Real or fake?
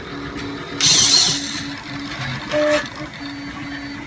real